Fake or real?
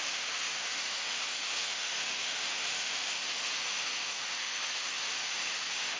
fake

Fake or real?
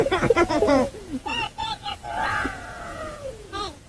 fake